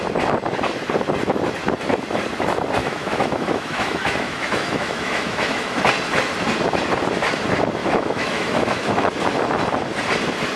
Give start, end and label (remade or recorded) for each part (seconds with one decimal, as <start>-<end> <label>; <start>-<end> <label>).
0.0-2.8 recorded; 2.8-5.8 remade; 5.8-7.8 recorded; 7.8-9.1 remade; 9.1-10.6 recorded